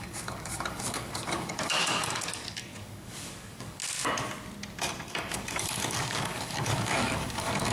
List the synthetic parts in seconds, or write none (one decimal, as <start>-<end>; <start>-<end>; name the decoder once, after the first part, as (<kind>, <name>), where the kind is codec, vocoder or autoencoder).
0.0-3.8 (codec, DAC); 5.1-7.7